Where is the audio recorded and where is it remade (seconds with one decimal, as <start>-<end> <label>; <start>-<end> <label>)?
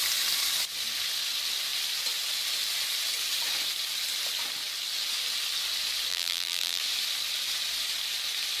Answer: 0.0-6.1 recorded; 6.1-6.8 remade; 6.8-8.6 recorded